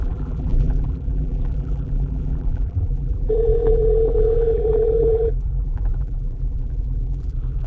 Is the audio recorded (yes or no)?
no